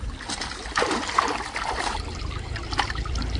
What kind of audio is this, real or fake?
fake